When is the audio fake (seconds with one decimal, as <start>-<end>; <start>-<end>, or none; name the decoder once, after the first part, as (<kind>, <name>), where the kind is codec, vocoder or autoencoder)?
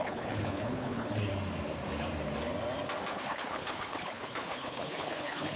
0.0-1.3 (codec, HILCodec); 3.1-5.6